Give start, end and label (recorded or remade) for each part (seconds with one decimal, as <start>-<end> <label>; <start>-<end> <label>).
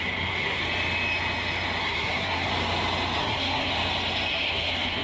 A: 0.0-0.6 remade; 0.6-1.8 recorded; 1.8-2.5 remade; 2.5-3.2 recorded; 3.2-3.7 remade; 3.7-4.3 recorded; 4.3-5.0 remade